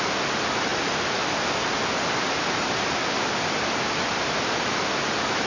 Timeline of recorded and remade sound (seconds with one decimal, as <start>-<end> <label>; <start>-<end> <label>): 0.0-5.5 recorded